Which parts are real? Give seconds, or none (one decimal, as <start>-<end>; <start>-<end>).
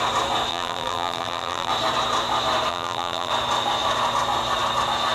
0.0-0.5; 1.7-2.7; 3.3-5.1